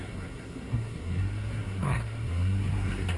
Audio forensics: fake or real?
fake